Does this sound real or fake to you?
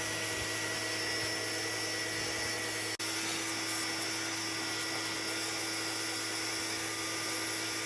real